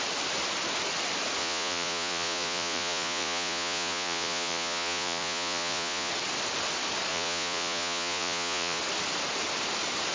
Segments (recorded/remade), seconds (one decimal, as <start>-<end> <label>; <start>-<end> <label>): 0.0-1.4 recorded; 1.4-6.1 remade; 6.1-7.1 recorded; 7.1-8.8 remade; 8.8-10.1 recorded